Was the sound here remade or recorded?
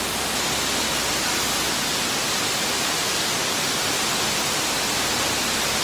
recorded